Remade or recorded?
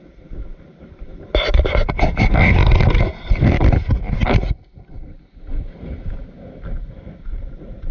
remade